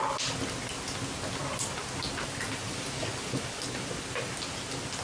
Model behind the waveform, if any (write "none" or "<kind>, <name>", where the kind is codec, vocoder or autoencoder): none